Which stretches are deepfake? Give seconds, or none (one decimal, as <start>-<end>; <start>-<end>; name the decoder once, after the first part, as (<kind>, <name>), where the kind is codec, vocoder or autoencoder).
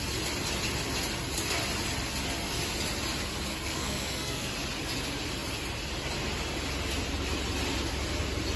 3.5-4.5 (codec, SNAC)